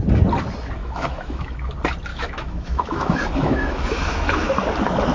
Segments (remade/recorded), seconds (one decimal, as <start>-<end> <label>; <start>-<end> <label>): 0.0-0.8 recorded; 0.8-1.7 remade; 1.7-2.1 recorded; 2.1-4.5 remade; 4.5-5.1 recorded